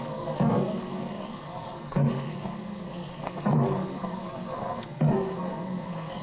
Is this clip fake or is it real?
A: fake